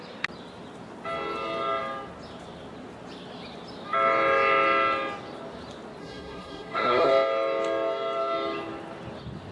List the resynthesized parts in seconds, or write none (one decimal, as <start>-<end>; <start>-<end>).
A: 6.0-7.1